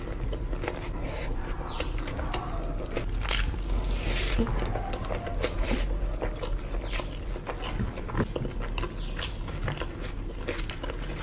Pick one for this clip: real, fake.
real